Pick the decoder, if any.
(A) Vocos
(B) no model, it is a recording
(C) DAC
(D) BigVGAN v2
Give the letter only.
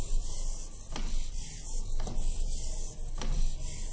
B